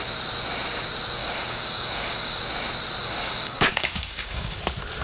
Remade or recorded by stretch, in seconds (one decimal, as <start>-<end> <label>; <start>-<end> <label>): 0.0-1.2 recorded; 1.2-2.4 remade; 2.4-3.0 recorded; 3.0-4.6 remade; 4.6-5.0 recorded